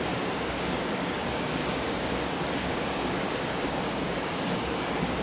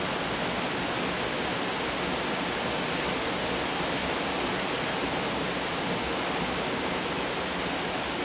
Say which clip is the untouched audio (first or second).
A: second